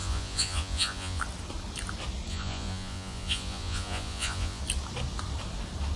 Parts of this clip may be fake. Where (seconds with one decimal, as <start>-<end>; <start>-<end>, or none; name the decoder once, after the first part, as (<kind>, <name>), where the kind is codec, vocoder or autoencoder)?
0.0-1.2 (vocoder, Vocos); 2.3-4.6